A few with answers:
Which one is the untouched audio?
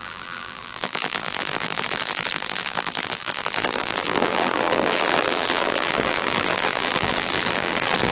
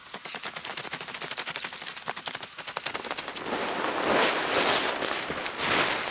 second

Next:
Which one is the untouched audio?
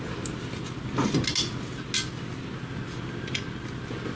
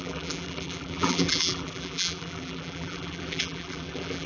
first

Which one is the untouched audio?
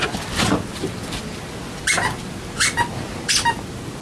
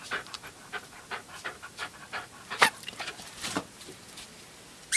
first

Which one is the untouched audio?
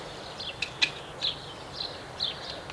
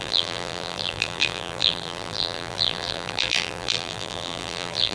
first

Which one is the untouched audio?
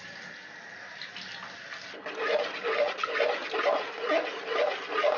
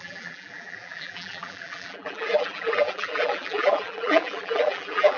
first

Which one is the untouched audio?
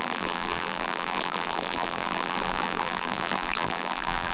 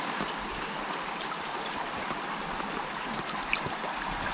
second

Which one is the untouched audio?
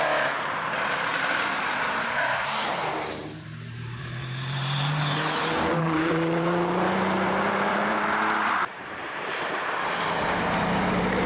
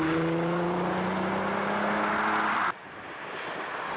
second